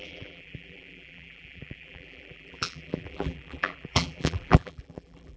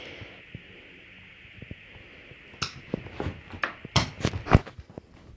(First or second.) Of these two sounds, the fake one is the first